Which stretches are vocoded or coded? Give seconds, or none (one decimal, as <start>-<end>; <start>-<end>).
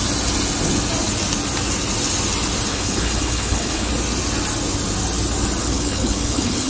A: 2.7-3.9; 5.6-6.7